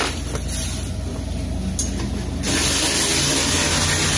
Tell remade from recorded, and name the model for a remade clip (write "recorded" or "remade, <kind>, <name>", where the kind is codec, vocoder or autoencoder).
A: recorded